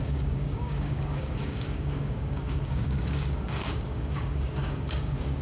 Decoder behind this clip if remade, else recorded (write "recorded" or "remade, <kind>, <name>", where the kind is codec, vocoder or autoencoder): remade, codec, DAC